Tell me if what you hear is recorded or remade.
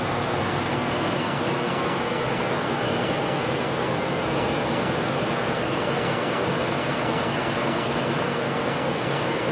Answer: remade